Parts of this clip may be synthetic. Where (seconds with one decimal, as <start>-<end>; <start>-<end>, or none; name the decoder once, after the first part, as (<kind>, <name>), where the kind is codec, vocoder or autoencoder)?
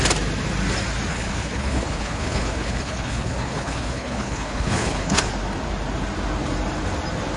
1.1-5.3 (codec, HILCodec)